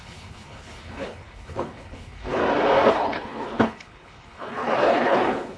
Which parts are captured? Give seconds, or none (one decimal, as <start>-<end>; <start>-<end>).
2.4-2.9